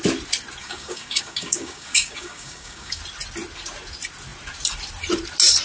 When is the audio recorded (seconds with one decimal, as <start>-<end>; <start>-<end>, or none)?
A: 0.0-0.6; 3.0-5.6